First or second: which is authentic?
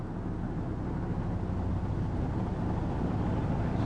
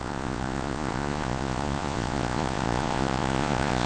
first